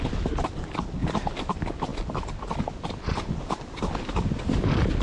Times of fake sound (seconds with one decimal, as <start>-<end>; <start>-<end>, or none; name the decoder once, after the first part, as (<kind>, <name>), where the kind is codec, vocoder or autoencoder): none